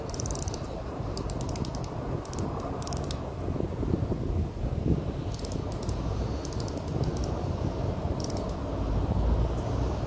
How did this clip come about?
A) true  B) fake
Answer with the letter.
A